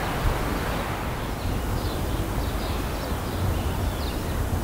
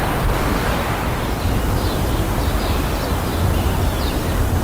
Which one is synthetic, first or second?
second